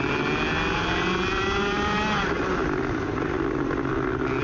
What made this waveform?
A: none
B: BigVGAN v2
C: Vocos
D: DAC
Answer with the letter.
A